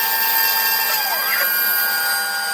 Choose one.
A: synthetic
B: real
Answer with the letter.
B